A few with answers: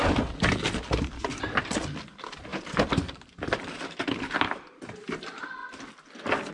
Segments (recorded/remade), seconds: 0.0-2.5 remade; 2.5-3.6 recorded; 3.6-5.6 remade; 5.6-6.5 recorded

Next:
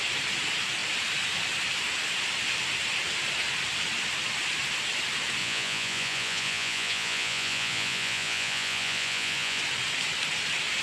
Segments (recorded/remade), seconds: 0.0-5.4 recorded; 5.4-9.6 remade; 9.6-10.8 recorded